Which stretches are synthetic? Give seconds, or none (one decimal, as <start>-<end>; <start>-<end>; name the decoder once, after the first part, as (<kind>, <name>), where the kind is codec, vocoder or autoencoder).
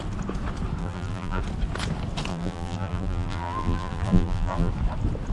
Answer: 0.8-1.4 (vocoder, BigVGAN v2); 2.3-4.7